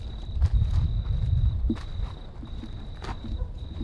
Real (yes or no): no